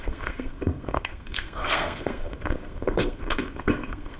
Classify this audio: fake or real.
fake